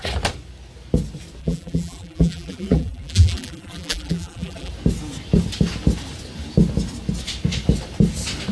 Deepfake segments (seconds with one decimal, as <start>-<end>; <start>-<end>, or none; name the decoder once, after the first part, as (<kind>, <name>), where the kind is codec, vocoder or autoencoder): 1.4-4.7 (vocoder, BigVGAN v2)